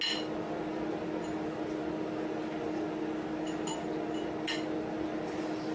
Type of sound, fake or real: real